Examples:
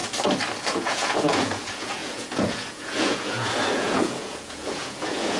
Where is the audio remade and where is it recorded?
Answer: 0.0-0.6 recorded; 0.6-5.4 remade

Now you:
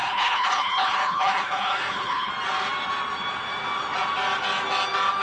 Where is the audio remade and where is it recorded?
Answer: 0.0-2.3 remade; 2.3-5.2 recorded

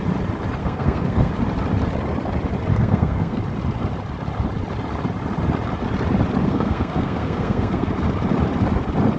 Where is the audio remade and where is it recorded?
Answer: 0.0-0.6 recorded; 0.6-1.3 remade; 1.3-2.7 recorded; 2.7-3.4 remade; 3.4-6.4 recorded; 6.4-7.9 remade; 7.9-9.2 recorded

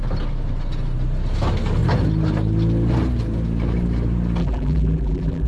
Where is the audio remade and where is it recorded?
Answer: 0.0-4.4 recorded; 4.4-5.5 remade